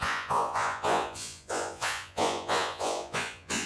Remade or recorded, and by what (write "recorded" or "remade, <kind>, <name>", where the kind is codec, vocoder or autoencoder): remade, vocoder, Vocos